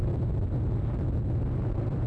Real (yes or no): no